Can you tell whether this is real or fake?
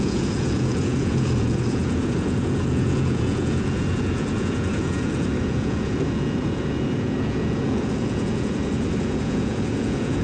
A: fake